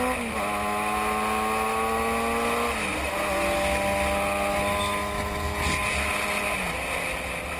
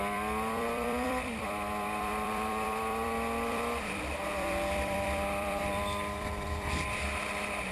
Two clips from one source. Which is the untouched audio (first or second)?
first